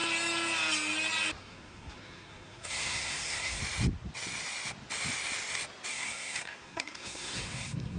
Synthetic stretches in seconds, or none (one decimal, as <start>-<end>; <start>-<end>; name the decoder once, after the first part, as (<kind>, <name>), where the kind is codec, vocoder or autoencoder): 1.4-3.6 (codec, SNAC); 5.9-8.0